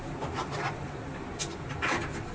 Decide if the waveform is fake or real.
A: real